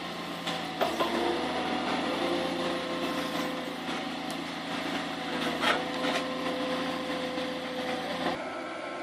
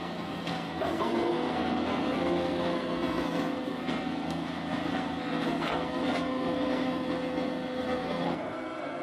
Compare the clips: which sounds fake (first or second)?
second